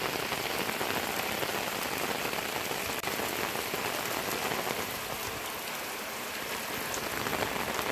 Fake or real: real